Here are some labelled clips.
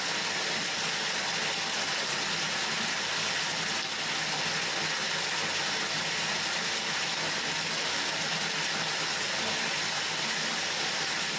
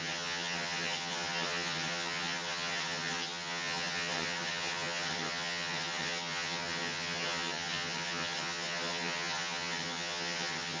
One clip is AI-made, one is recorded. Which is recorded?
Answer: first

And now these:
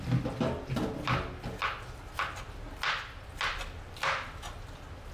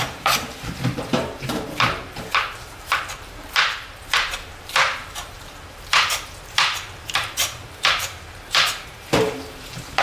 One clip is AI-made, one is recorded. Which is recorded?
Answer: first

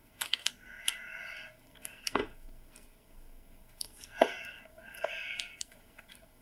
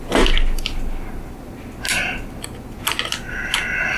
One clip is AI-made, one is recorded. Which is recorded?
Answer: second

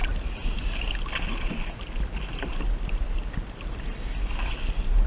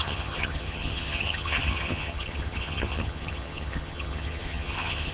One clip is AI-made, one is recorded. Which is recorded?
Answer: first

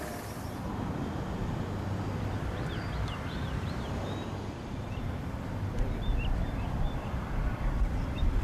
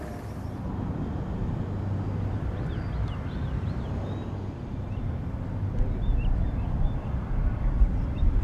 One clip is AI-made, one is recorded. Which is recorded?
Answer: second